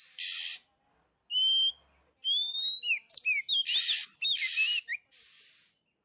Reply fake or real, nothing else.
real